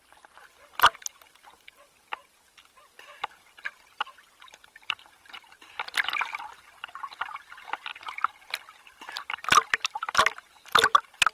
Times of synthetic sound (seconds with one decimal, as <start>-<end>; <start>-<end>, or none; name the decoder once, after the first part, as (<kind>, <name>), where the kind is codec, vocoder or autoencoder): none